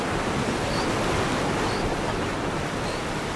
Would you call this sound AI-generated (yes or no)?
no